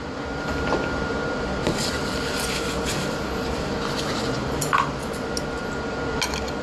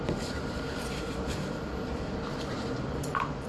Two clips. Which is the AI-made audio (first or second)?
second